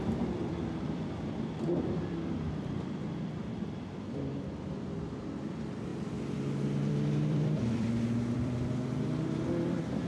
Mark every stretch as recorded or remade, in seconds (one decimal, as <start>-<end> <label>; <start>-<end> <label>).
0.0-3.5 remade; 3.5-4.6 recorded; 4.6-5.9 remade; 5.9-6.9 recorded; 6.9-10.1 remade